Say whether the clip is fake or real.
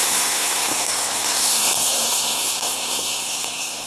fake